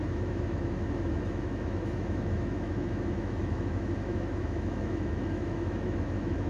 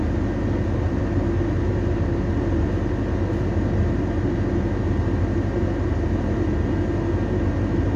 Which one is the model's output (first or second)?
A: first